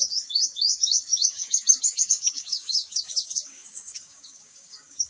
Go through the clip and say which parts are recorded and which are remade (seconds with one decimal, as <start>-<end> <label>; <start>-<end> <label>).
0.0-5.1 remade

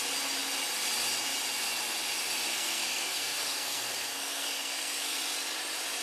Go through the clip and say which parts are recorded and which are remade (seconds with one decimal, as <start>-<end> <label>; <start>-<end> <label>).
0.0-2.5 recorded; 2.5-5.2 remade; 5.2-6.0 recorded

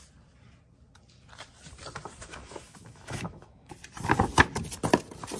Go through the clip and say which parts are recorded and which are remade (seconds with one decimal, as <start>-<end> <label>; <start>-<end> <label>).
0.0-2.2 recorded; 2.2-3.7 remade; 3.7-5.4 recorded

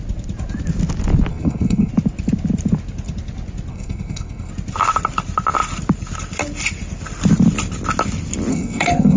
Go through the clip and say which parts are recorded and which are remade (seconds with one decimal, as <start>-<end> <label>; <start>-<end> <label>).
0.0-1.3 recorded; 1.3-1.9 remade; 1.9-3.7 recorded; 3.7-4.5 remade; 4.5-8.5 recorded; 8.5-9.2 remade

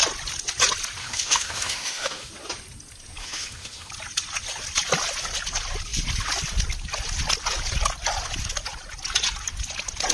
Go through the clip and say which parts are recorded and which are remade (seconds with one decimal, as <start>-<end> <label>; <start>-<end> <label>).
0.0-1.0 recorded; 1.0-2.3 remade; 2.3-3.2 recorded; 3.2-3.9 remade; 3.9-10.1 recorded

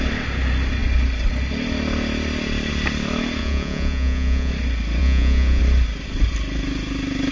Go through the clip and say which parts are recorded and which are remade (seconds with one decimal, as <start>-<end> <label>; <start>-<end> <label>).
0.0-3.4 recorded; 3.4-4.5 remade; 4.5-5.0 recorded; 5.0-5.6 remade; 5.6-7.3 recorded

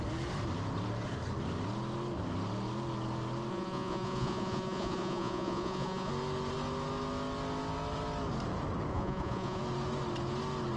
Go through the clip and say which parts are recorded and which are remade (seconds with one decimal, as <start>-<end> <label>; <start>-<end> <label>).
0.0-3.5 recorded; 3.5-6.1 remade; 6.1-8.9 recorded; 8.9-9.6 remade; 9.6-10.8 recorded

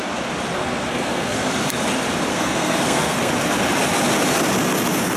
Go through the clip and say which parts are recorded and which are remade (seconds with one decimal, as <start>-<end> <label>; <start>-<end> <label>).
0.0-0.6 recorded; 0.6-1.5 remade; 1.5-2.3 recorded; 2.3-3.3 remade; 3.3-5.2 recorded